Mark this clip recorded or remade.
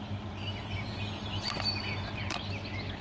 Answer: recorded